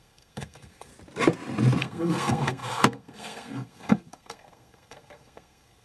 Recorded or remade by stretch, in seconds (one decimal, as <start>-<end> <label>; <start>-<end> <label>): 0.0-0.9 remade; 0.9-1.8 recorded; 1.8-5.8 remade

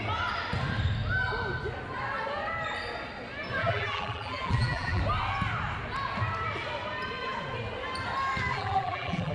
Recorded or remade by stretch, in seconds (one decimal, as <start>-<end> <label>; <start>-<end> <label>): 0.0-3.6 recorded; 3.6-5.0 remade; 5.0-8.5 recorded; 8.5-9.3 remade

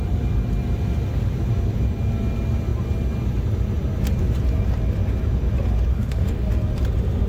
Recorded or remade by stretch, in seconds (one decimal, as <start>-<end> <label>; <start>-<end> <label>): 0.0-5.9 recorded; 5.9-6.5 remade; 6.5-7.3 recorded

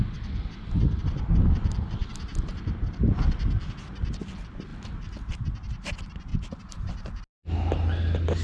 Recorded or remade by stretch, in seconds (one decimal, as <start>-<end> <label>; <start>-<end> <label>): 0.0-6.3 recorded; 6.3-7.2 remade; 7.2-8.4 recorded

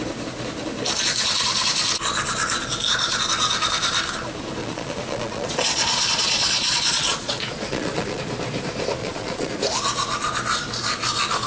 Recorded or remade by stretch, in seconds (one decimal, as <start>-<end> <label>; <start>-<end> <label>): 0.0-4.6 recorded; 4.6-8.2 remade; 8.2-9.0 recorded; 9.0-9.5 remade; 9.5-11.5 recorded

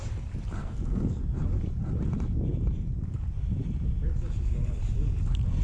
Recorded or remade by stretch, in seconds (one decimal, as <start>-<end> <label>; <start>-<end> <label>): 0.0-0.6 recorded; 0.6-1.2 remade; 1.2-5.6 recorded

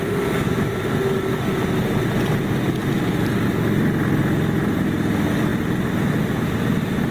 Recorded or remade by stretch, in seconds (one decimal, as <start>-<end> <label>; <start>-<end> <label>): 0.0-7.1 recorded